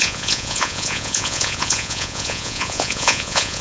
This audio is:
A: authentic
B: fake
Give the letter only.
B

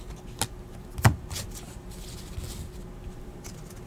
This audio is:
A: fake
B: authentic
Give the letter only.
B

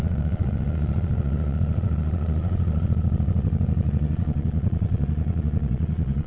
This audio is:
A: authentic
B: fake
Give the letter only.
B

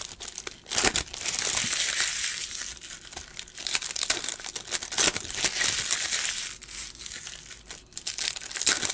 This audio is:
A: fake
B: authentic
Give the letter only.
B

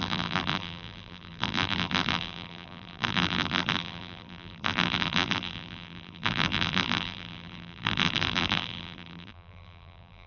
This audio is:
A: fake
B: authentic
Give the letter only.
A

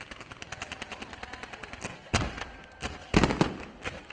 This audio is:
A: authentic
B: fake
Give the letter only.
A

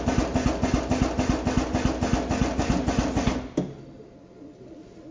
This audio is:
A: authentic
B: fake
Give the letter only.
A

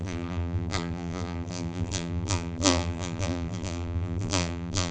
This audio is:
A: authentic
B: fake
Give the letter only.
B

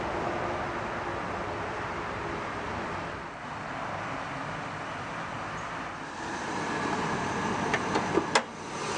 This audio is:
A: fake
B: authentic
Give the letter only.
B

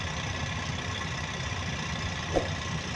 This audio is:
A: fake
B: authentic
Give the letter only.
B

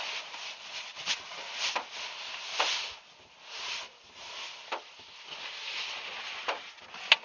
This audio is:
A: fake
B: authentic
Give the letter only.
B